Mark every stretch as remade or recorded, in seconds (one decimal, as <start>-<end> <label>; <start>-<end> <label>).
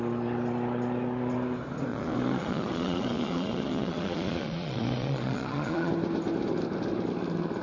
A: 0.0-1.9 recorded; 1.9-5.9 remade; 5.9-7.6 recorded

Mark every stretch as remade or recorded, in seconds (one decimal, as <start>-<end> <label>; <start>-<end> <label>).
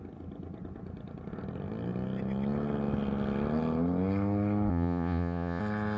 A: 0.0-4.7 recorded; 4.7-5.6 remade; 5.6-6.0 recorded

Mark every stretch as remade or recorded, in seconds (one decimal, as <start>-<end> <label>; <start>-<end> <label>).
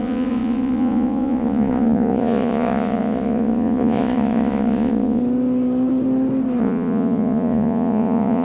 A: 0.0-5.2 remade; 5.2-6.6 recorded; 6.6-8.4 remade